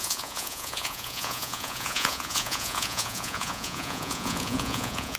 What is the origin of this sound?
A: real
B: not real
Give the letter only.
B